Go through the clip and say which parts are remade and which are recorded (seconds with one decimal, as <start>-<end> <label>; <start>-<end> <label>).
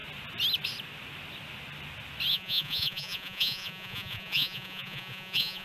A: 0.0-2.3 recorded; 2.3-5.6 remade